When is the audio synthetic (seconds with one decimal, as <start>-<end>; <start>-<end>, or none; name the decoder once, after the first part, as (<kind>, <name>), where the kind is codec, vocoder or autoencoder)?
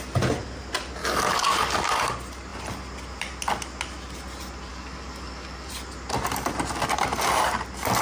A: 1.0-2.1 (codec, DAC); 4.7-5.7